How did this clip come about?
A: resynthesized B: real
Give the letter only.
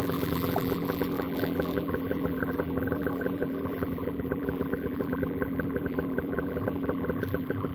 A